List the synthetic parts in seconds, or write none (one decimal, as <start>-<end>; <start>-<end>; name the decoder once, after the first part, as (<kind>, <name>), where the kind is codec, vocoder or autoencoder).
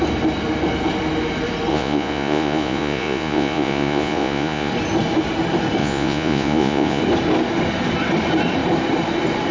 1.7-4.7 (vocoder, Vocos); 5.8-7.0